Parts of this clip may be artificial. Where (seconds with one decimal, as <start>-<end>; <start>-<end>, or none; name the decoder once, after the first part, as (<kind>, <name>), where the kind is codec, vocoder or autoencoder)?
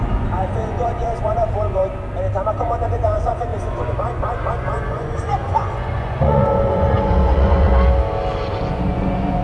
0.0-1.8 (vocoder, Vocos); 2.6-7.7; 8.7-9.4